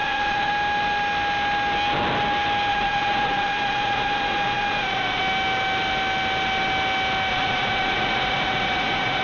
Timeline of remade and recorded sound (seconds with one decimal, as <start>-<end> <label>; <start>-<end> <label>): 0.0-0.5 remade; 0.5-2.7 recorded; 2.7-5.2 remade; 5.2-7.3 recorded; 7.3-9.2 remade